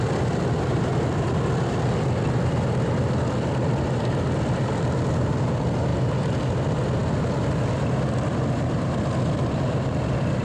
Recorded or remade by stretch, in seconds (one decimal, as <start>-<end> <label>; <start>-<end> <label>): 0.0-10.4 recorded